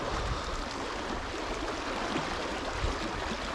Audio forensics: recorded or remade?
recorded